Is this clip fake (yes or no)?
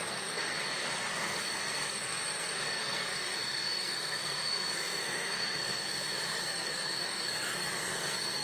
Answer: yes